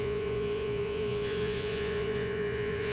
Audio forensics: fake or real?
fake